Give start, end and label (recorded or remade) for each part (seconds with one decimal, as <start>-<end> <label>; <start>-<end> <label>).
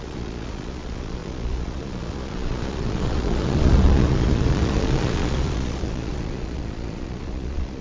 0.0-7.8 remade